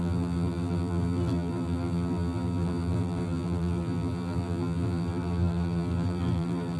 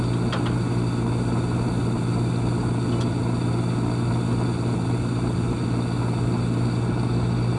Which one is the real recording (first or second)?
second